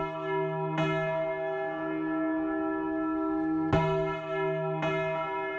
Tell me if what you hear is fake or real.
real